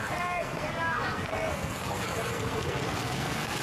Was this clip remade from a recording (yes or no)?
yes